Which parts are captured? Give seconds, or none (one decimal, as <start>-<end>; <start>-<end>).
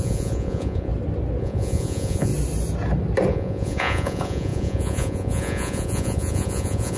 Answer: 0.9-1.4; 2.3-3.3